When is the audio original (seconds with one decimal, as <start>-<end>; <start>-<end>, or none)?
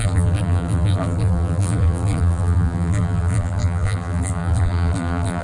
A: none